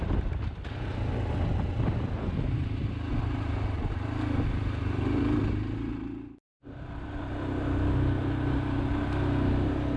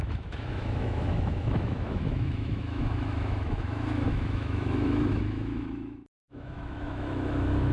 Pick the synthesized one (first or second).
second